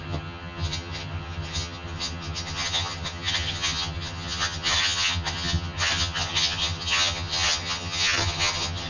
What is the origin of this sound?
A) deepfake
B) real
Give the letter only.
A